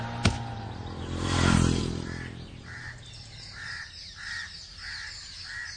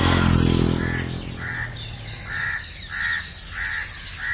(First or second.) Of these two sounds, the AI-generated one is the first